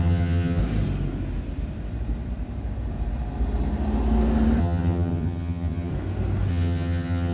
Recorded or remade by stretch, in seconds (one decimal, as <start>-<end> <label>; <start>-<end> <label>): 0.0-0.6 remade; 0.6-4.6 recorded; 4.6-5.9 remade; 5.9-6.5 recorded; 6.5-7.3 remade